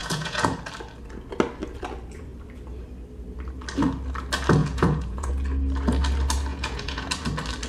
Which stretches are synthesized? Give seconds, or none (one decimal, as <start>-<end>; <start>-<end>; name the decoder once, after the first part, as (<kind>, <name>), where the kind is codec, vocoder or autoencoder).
0.0-0.6 (vocoder, Vocos); 4.6-5.3; 6.5-7.1